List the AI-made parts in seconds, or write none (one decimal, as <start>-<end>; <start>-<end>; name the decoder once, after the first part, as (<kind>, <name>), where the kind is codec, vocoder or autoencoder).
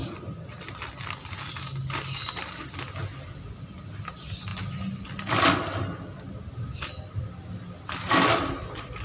none